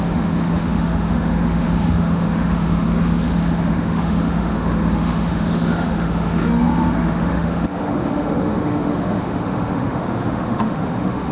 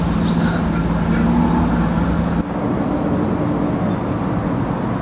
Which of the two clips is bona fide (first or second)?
second